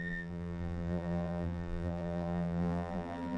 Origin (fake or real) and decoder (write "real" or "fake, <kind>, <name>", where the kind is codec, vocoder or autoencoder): fake, vocoder, BigVGAN v2